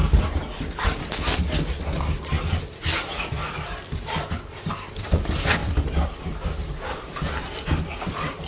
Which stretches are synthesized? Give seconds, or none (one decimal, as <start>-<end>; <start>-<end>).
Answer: 5.0-5.6; 6.7-8.5